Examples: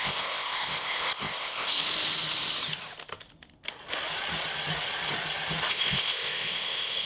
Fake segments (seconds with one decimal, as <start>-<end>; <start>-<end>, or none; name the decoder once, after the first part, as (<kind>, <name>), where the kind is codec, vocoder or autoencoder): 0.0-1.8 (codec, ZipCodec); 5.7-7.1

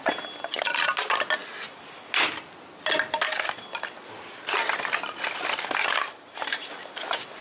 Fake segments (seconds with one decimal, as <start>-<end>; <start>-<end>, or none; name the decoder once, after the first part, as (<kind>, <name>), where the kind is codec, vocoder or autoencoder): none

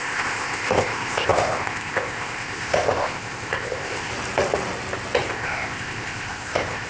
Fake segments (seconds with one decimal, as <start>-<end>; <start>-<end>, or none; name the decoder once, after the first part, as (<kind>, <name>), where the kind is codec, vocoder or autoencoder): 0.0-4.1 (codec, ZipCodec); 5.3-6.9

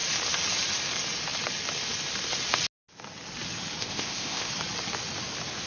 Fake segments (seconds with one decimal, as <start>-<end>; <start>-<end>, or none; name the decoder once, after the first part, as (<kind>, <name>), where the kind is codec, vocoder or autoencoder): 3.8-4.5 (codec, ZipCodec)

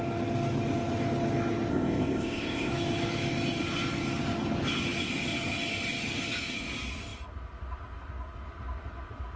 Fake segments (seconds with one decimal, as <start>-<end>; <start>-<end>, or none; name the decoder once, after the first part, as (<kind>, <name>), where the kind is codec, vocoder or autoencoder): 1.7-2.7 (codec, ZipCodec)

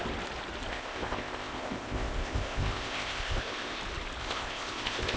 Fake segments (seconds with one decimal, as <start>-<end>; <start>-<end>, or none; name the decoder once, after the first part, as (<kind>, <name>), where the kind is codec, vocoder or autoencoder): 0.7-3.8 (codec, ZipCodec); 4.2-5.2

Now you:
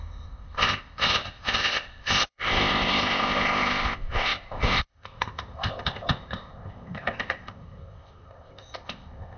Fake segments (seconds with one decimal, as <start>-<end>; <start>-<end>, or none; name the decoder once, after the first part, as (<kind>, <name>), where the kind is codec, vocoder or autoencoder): 0.0-9.4 (codec, ZipCodec)

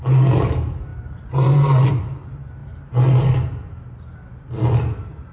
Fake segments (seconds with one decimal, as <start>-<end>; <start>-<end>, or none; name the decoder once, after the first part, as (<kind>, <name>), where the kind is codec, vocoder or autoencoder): none